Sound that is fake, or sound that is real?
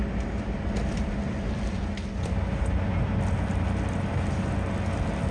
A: real